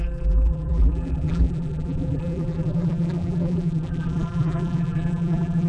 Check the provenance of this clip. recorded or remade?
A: remade